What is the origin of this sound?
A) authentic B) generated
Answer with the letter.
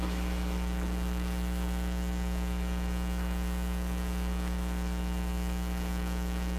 B